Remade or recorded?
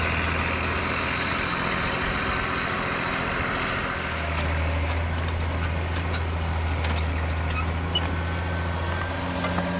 recorded